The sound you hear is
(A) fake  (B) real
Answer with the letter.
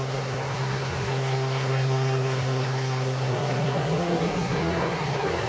A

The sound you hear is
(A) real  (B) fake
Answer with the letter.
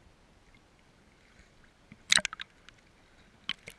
A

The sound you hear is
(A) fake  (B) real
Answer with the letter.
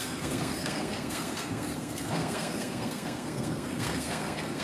A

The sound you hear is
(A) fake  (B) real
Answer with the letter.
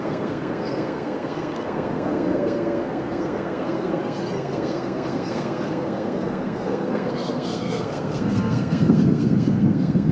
A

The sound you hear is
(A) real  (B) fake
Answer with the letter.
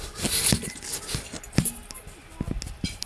A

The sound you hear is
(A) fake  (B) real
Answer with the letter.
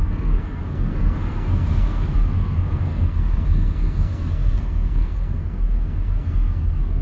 A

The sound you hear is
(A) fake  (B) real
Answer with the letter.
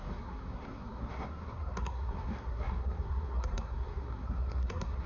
A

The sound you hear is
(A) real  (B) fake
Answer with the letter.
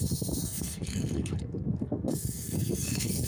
B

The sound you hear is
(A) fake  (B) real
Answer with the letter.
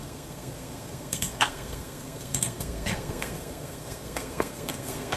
A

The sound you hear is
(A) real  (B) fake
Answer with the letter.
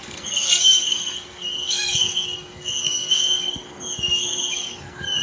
B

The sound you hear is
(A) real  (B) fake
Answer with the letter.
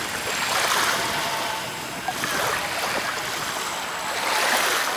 A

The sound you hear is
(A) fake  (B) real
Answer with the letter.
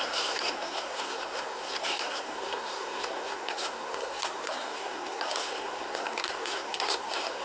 A